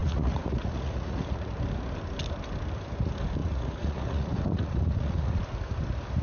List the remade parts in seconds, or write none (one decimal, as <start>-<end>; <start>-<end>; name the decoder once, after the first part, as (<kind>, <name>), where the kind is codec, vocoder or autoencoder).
0.0-1.5 (vocoder, Vocos); 3.4-5.4